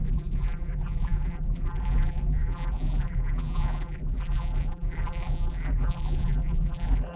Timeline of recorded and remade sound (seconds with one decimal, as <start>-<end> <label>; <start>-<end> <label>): 0.0-7.2 remade